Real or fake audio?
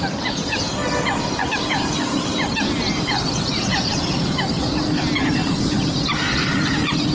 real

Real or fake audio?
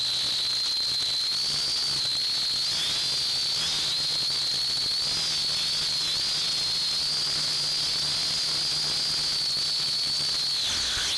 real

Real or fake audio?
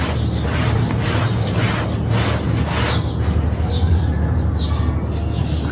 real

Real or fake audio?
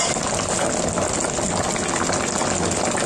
real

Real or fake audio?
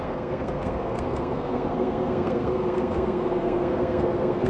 fake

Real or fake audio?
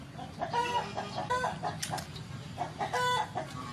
real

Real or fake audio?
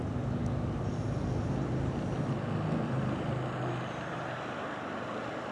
real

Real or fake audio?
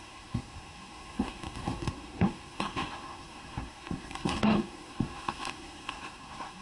fake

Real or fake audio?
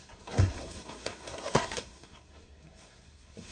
fake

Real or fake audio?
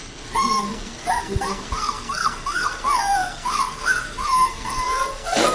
fake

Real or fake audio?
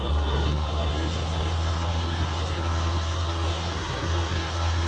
fake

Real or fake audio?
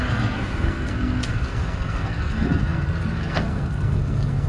fake